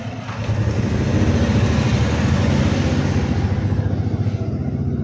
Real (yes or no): yes